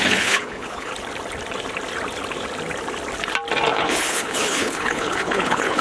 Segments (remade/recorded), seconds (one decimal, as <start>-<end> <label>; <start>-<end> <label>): 0.0-0.9 remade; 0.9-3.7 recorded; 3.7-5.8 remade